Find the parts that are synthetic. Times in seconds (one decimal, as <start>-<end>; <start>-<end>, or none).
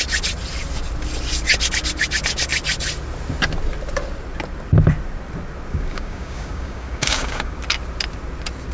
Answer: 5.7-7.6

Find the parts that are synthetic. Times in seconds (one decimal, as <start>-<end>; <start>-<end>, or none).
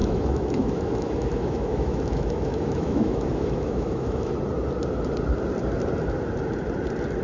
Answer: 0.0-4.3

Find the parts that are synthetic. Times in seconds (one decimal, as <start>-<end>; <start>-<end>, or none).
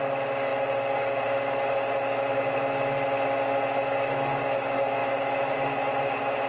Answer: none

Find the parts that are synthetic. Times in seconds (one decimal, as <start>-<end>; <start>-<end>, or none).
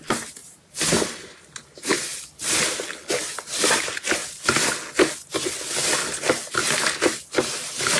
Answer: 0.0-2.1; 3.1-4.2; 6.5-8.0